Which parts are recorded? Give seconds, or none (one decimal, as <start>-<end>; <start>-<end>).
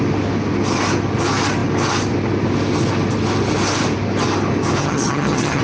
0.0-4.8